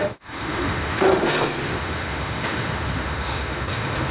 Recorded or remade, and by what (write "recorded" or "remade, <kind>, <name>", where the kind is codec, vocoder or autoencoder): remade, autoencoder, DAC-VAE